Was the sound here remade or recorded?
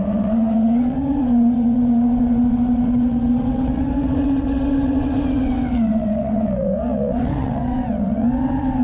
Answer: remade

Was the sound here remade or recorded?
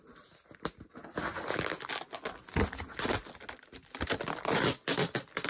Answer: recorded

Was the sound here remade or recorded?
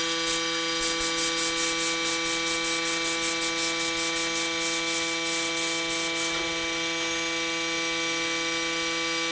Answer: recorded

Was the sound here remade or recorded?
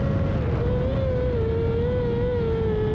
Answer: recorded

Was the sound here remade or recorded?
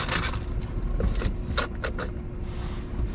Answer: recorded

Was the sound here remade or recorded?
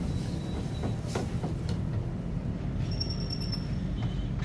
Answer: remade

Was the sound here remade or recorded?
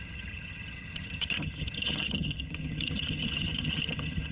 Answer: remade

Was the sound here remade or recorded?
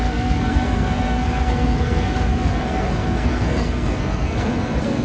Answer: remade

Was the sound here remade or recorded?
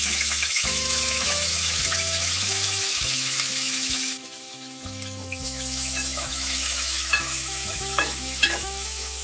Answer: remade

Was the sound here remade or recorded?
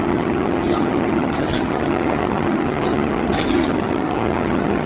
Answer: remade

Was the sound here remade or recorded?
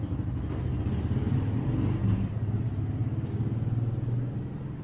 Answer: recorded